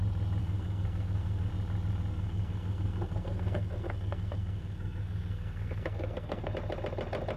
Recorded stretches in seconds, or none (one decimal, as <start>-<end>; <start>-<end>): 0.0-0.4; 1.5-2.1; 6.5-7.4

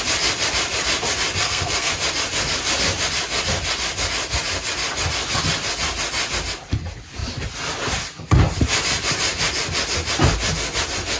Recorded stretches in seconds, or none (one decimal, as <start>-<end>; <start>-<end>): 0.0-1.4; 1.9-11.2

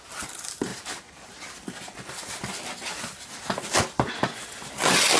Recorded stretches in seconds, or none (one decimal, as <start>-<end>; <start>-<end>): 0.0-5.2

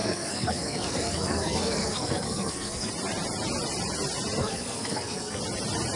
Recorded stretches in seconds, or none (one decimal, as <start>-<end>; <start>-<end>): 2.9-4.4; 5.4-6.0

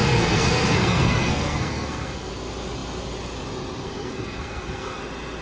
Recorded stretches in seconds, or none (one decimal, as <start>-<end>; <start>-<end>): 2.3-3.8; 5.0-5.4

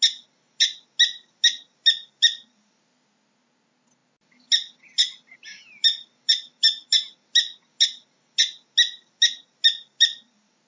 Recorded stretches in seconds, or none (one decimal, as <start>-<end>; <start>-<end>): 0.0-10.7

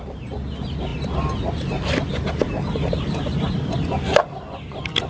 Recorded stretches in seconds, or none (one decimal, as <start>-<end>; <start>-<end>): 0.0-5.1